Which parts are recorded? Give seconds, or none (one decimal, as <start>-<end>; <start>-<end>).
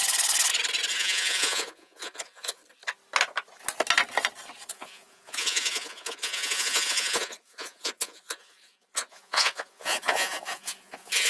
0.0-0.9; 2.6-4.7